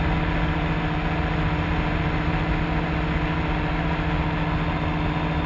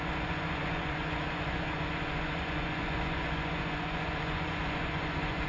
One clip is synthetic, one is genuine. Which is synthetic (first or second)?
second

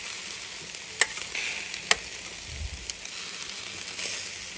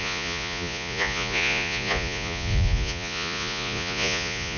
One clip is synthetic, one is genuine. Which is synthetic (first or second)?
second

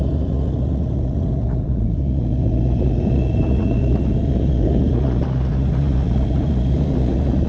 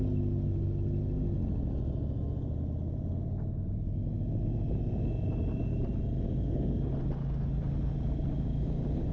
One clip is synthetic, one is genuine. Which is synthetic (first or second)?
first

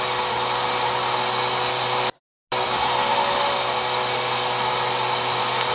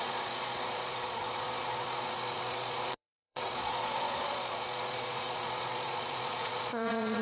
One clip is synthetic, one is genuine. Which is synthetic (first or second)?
second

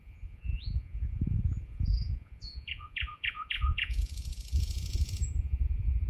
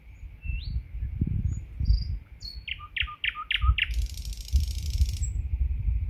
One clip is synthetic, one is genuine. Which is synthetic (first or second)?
first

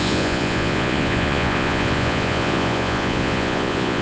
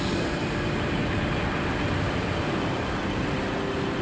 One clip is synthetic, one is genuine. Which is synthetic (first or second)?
first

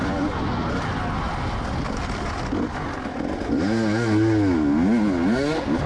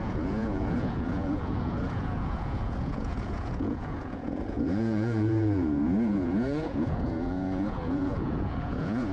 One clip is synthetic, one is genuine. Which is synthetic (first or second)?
second